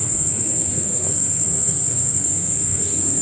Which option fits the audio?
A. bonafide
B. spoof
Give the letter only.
B